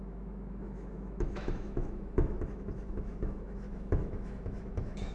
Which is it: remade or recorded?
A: remade